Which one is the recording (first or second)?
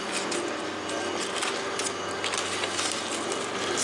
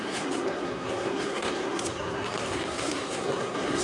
first